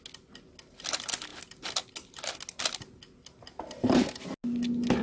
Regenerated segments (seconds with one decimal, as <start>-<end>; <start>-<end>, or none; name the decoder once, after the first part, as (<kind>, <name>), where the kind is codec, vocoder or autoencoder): none